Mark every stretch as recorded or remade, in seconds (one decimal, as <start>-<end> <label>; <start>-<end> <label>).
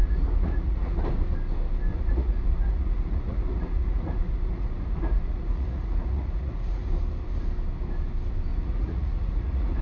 0.0-1.0 remade; 1.0-1.9 recorded; 1.9-6.9 remade; 6.9-8.5 recorded; 8.5-9.8 remade